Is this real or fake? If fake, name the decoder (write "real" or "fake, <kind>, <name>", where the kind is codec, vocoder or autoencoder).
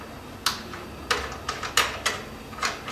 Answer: real